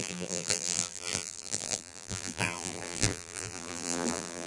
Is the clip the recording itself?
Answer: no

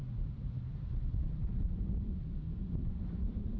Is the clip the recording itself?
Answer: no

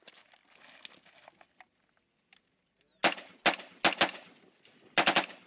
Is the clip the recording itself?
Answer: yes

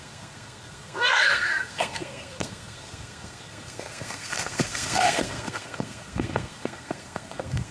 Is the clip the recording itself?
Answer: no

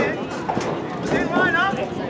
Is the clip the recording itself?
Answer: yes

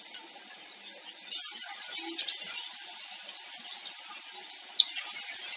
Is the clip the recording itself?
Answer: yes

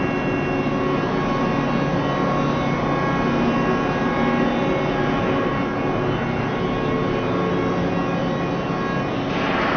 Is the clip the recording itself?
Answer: yes